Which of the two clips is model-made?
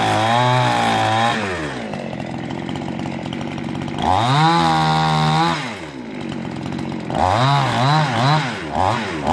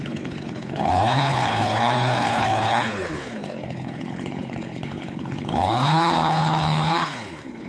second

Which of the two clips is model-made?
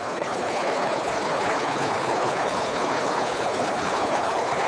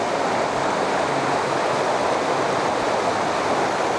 first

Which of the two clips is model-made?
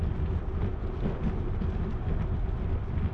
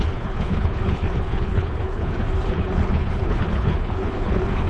second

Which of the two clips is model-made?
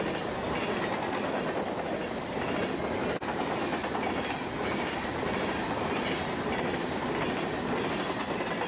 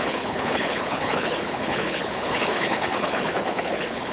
second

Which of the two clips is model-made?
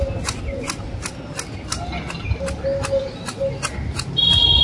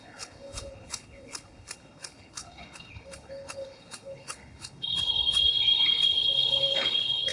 second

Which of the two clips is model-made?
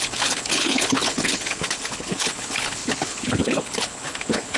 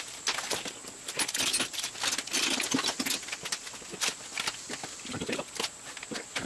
first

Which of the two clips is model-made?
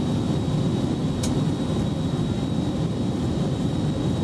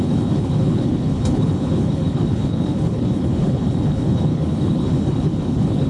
second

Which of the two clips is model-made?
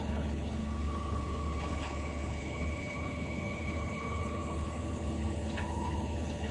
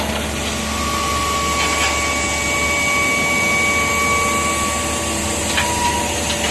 first